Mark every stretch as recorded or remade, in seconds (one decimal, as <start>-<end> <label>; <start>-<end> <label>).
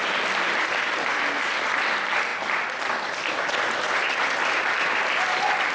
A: 0.0-5.7 recorded